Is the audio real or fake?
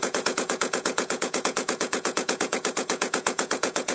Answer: fake